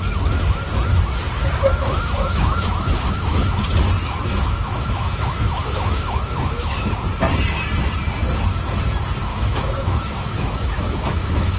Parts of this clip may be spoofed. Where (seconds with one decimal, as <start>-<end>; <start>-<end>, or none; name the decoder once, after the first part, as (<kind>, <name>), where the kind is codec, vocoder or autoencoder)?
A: 1.7-3.6 (autoencoder, DAC-VAE); 4.0-6.9; 9.3-11.6